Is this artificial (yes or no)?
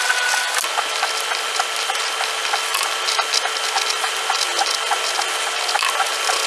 no